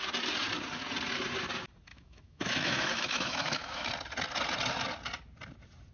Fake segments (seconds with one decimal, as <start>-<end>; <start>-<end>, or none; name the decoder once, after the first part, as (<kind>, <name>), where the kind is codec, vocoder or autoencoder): 1.9-3.9 (autoencoder, DAC-VAE)

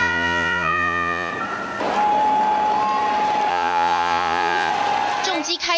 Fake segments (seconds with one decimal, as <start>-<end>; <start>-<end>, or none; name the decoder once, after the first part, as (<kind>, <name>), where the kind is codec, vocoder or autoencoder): 0.0-1.3 (vocoder, Vocos); 3.5-4.7

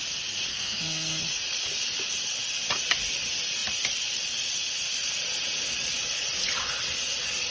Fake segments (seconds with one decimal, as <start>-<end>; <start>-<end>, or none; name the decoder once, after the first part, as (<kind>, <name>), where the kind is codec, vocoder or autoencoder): 0.5-1.2 (codec, SNAC)

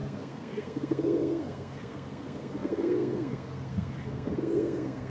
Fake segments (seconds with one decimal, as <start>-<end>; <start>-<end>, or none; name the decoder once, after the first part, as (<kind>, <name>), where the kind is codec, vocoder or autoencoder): 0.0-5.1 (codec, SNAC)

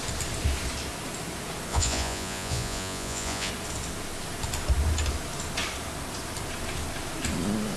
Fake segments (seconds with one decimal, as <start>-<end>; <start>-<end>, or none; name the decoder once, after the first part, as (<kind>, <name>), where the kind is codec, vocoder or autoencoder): 1.7-3.5 (vocoder, Vocos)

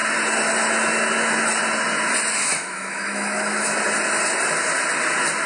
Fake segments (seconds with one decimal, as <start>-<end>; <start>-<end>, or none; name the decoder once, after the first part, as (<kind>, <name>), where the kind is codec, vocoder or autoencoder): 2.3-3.7 (autoencoder, DAC-VAE)

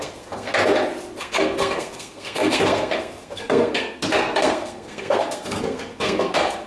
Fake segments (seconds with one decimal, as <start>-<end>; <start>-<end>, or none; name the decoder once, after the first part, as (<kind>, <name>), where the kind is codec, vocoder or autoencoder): 0.0-0.5 (codec, SNAC); 1.2-6.7

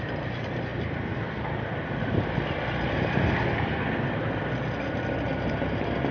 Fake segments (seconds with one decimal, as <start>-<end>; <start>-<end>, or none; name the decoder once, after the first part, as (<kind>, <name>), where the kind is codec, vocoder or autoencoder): none